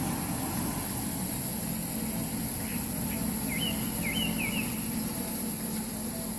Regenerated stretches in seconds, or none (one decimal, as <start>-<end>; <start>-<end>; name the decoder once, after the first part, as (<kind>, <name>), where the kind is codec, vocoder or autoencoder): none